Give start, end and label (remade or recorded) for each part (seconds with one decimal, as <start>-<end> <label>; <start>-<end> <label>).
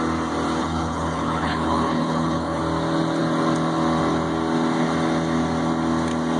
0.0-0.6 recorded; 0.6-2.6 remade; 2.6-6.4 recorded